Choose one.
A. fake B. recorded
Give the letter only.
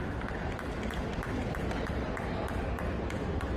B